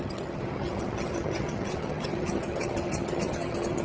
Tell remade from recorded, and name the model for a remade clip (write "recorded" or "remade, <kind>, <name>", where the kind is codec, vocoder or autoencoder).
remade, vocoder, HiFi-GAN